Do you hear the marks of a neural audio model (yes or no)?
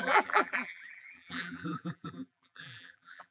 yes